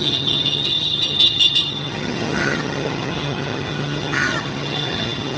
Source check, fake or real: fake